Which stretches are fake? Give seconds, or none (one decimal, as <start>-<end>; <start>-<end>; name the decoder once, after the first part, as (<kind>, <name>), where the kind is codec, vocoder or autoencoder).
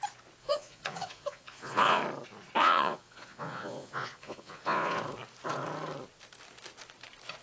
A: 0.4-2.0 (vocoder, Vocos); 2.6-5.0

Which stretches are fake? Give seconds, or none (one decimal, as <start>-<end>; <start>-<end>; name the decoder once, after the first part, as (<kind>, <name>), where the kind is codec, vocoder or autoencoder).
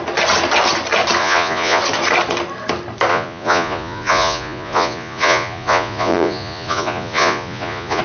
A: 1.2-1.8 (vocoder, Vocos); 3.1-8.0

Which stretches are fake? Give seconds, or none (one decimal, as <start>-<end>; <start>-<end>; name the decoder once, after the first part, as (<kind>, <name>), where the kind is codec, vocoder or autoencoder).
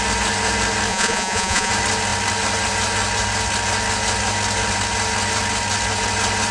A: 0.9-1.7 (vocoder, Vocos)